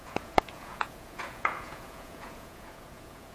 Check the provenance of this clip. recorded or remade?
remade